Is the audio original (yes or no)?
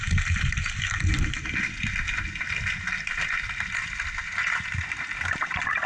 yes